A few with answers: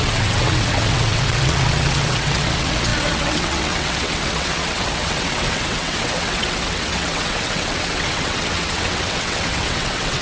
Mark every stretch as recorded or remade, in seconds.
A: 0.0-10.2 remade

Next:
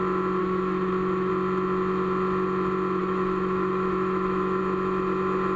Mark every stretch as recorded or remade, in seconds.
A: 0.0-0.4 recorded; 0.4-1.3 remade; 1.3-3.0 recorded; 3.0-4.6 remade; 4.6-5.6 recorded

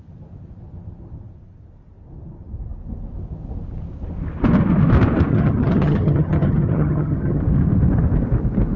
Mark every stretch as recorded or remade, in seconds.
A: 0.0-5.3 recorded; 5.3-7.4 remade; 7.4-8.8 recorded

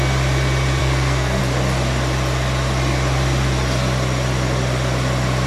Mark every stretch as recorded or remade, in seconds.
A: 0.0-0.8 recorded; 0.8-1.4 remade; 1.4-5.5 recorded

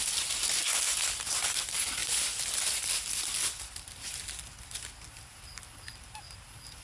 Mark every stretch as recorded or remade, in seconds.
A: 0.0-6.8 recorded

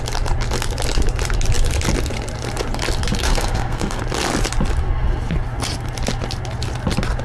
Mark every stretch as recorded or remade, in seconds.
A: 0.0-3.2 recorded; 3.2-4.0 remade; 4.0-7.2 recorded